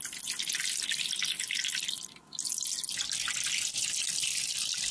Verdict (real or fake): real